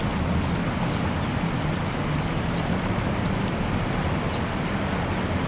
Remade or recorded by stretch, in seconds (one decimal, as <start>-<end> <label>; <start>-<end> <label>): 0.0-5.5 recorded